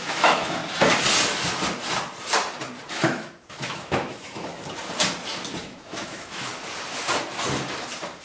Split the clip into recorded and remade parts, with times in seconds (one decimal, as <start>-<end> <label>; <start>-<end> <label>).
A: 0.0-0.6 remade; 0.6-2.9 recorded; 2.9-4.5 remade; 4.5-5.6 recorded; 5.6-6.5 remade; 6.5-8.2 recorded